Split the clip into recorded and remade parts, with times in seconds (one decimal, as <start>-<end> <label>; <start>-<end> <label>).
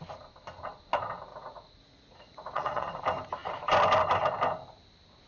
0.0-1.3 recorded; 1.3-3.0 remade; 3.0-5.3 recorded